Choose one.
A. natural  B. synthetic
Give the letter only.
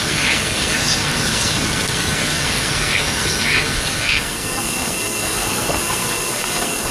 B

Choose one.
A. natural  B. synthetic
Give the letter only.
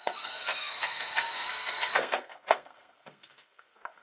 B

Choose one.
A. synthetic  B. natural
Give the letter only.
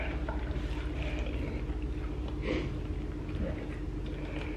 B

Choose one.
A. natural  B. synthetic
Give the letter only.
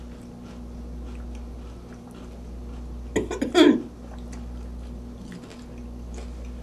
A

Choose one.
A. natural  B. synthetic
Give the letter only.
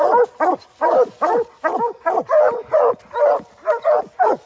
A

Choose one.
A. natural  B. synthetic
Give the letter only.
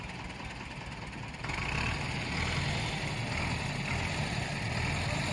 A